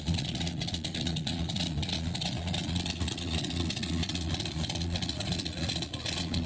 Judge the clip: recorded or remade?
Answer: remade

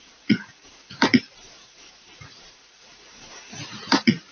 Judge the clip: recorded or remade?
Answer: remade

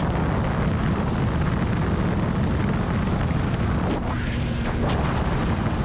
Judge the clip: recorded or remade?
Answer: recorded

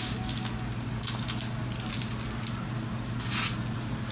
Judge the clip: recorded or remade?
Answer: recorded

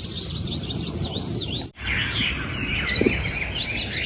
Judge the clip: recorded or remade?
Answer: recorded